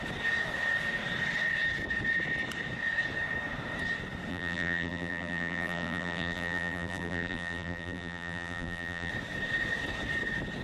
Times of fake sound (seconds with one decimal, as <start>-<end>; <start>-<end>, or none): 4.3-9.1